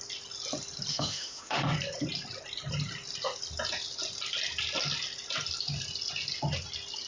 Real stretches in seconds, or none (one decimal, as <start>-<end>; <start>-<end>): 0.0-0.9; 1.6-7.1